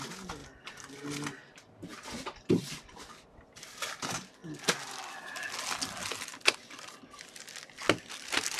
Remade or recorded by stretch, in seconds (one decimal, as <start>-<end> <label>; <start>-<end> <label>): 0.0-1.9 recorded; 1.9-3.4 remade; 3.4-8.6 recorded